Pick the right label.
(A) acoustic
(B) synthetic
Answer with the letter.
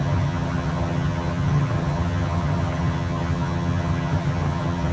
B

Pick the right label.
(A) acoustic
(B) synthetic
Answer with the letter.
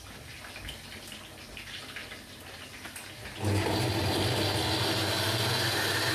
A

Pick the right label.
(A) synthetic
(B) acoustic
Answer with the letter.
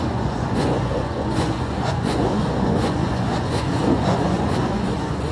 A